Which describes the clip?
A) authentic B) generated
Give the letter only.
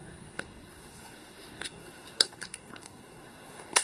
B